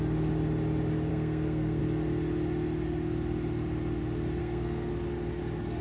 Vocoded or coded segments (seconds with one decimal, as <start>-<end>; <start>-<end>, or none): 1.1-1.8; 4.4-4.9